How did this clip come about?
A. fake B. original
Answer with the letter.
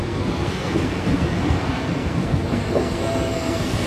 A